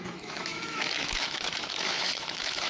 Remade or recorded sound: remade